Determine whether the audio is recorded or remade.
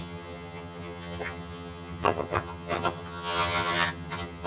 remade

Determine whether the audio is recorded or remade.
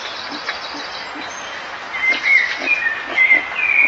recorded